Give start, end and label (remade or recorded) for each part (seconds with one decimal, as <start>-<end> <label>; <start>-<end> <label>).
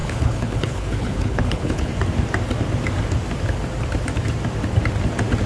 0.0-1.9 remade; 1.9-5.5 recorded